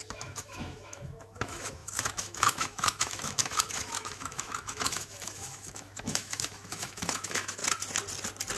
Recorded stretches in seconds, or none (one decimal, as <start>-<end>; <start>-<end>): 7.6-8.6